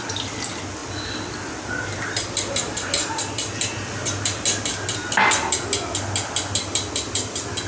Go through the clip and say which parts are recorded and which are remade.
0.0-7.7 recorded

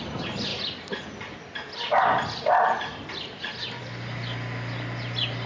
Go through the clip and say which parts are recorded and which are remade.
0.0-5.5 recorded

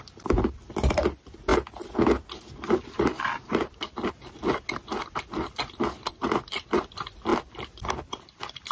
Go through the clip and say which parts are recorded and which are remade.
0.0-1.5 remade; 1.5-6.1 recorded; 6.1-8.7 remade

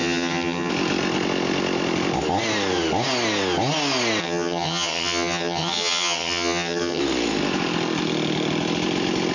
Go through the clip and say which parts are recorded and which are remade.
0.0-0.7 remade; 0.7-4.2 recorded; 4.2-7.0 remade; 7.0-9.3 recorded

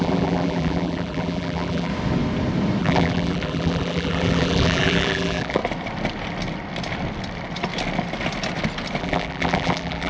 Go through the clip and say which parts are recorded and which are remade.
0.0-1.9 remade; 1.9-2.8 recorded; 2.8-5.6 remade; 5.6-9.0 recorded; 9.0-10.1 remade

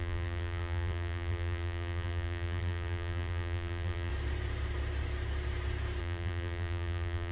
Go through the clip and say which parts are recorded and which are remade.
0.0-4.1 remade; 4.1-6.0 recorded; 6.0-7.3 remade